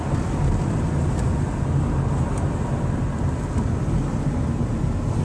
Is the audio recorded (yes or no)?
yes